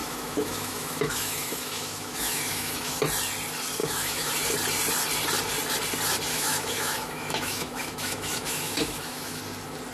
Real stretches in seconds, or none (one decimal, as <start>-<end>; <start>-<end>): 3.0-3.8; 4.3-6.3; 9.4-9.9